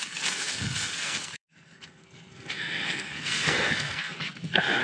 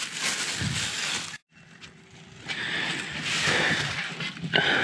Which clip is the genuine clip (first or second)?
second